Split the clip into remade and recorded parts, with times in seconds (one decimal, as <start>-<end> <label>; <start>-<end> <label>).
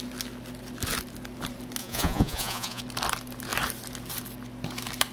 0.0-1.8 recorded; 1.8-2.8 remade; 2.8-5.1 recorded